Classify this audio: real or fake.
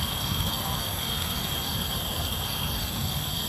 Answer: fake